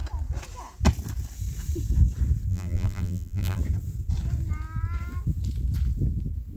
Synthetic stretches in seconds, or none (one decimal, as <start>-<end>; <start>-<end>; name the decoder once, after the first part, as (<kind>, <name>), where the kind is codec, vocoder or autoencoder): 2.5-3.6 (vocoder, BigVGAN v2)